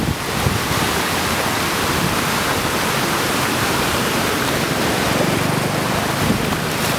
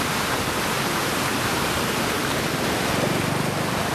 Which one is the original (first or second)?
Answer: second